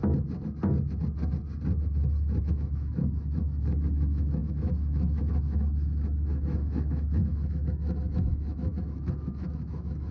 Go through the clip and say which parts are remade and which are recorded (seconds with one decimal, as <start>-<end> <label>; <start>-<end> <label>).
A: 0.0-2.4 recorded; 2.4-10.1 remade